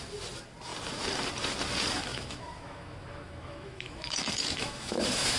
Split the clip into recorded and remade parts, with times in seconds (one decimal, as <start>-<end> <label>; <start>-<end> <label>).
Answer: 0.0-2.1 recorded; 2.1-5.4 remade